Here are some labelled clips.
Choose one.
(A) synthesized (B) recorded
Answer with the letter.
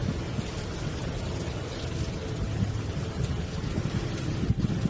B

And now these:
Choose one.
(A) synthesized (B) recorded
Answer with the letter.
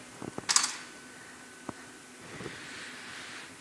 B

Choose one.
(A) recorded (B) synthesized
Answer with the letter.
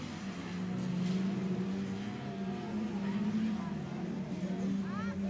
A